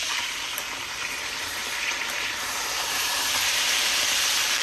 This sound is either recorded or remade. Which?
remade